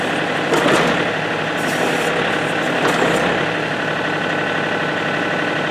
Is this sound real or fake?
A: real